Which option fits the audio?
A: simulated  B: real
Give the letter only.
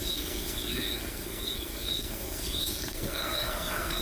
A